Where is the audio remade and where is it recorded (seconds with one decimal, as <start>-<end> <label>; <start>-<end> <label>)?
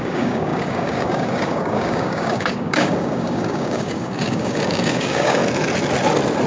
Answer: 0.0-5.4 remade; 5.4-6.5 recorded